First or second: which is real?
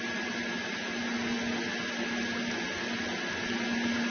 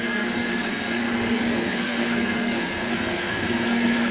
first